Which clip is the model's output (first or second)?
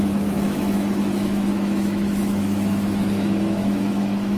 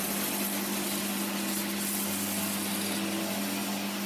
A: first